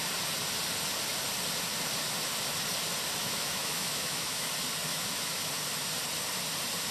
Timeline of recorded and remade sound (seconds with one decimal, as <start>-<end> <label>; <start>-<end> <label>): 0.0-3.2 recorded; 3.2-4.5 remade; 4.5-4.9 recorded; 4.9-5.5 remade; 5.5-6.9 recorded